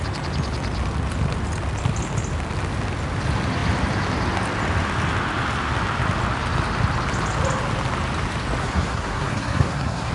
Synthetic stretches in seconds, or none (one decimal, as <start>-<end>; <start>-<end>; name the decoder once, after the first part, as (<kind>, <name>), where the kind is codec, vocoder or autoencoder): 8.6-10.1 (codec, SNAC)